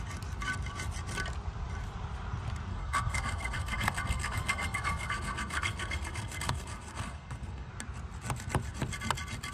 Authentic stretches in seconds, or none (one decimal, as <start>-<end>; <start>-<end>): 0.0-2.7; 7.7-9.5